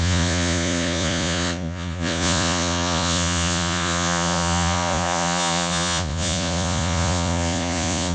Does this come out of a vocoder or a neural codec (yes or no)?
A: yes